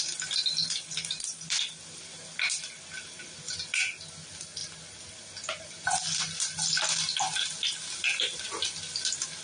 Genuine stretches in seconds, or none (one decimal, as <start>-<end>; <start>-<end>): 0.0-9.4